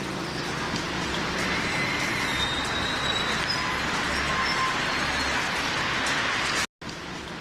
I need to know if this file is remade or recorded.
recorded